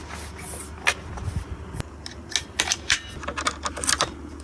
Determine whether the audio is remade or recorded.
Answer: recorded